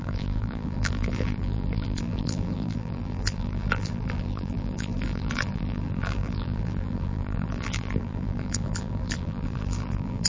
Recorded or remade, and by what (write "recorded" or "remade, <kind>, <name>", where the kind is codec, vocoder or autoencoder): remade, vocoder, BigVGAN v2